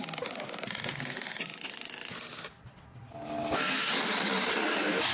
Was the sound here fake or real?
real